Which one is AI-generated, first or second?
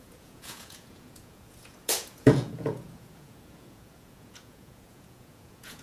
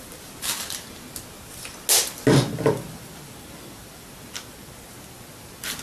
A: first